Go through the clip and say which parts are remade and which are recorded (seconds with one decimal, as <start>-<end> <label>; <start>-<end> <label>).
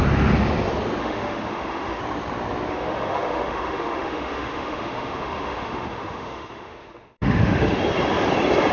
0.0-1.0 recorded; 1.0-2.0 remade; 2.0-2.7 recorded; 2.7-7.8 remade; 7.8-8.7 recorded